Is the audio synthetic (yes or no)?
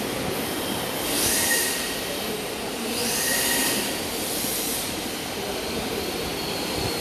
no